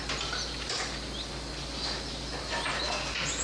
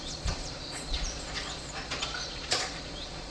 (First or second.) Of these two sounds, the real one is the first